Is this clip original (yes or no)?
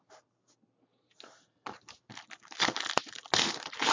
yes